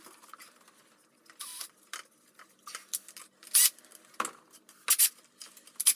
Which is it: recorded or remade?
recorded